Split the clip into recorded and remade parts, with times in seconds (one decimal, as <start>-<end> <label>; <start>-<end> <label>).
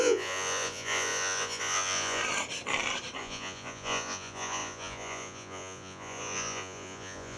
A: 0.0-2.2 remade; 2.2-3.2 recorded; 3.2-7.4 remade